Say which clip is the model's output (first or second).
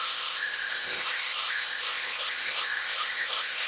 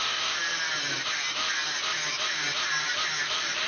first